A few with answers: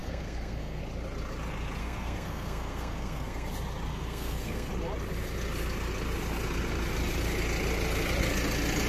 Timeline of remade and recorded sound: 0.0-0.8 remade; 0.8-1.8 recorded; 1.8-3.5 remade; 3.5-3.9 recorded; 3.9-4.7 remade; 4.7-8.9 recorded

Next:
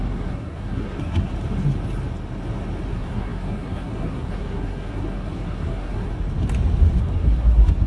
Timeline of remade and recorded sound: 0.0-1.3 remade; 1.3-2.9 recorded; 2.9-6.1 remade; 6.1-7.0 recorded; 7.0-7.9 remade

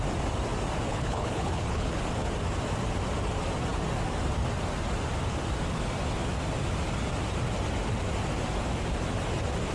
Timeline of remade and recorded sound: 0.0-0.9 recorded; 0.9-2.0 remade; 2.0-9.7 recorded

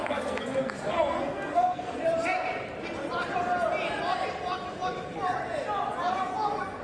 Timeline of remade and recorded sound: 0.0-2.0 remade; 2.0-6.1 recorded; 6.1-6.8 remade

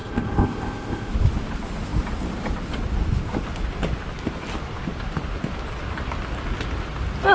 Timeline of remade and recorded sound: 0.0-1.1 remade; 1.1-7.3 recorded